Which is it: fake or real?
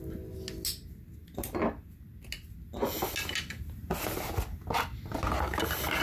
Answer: real